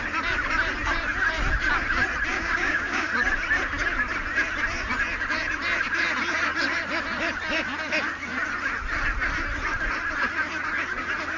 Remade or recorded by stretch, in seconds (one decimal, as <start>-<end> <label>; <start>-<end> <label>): 0.0-2.3 recorded; 2.3-3.1 remade; 3.1-11.4 recorded